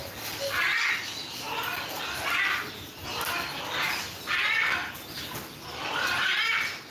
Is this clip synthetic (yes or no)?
no